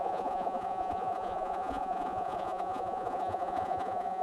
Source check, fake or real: fake